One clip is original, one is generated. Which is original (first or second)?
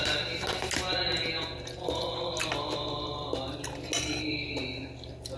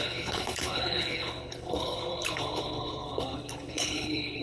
first